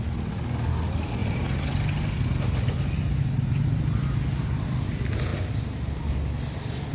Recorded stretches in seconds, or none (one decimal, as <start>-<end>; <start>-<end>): 0.0-6.9